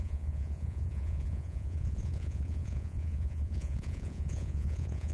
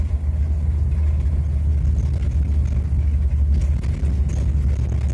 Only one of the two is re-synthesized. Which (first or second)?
first